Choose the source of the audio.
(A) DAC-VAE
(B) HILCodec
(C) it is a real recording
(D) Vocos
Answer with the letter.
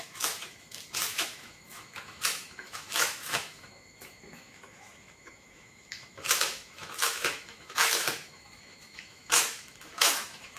A